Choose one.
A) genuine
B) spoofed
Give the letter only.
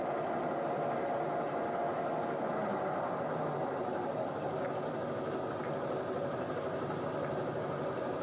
A